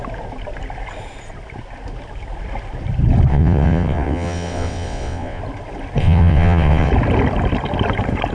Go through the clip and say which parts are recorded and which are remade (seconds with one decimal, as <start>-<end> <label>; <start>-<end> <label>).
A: 0.0-3.3 recorded; 3.3-5.4 remade; 5.4-6.0 recorded; 6.0-6.9 remade; 6.9-8.3 recorded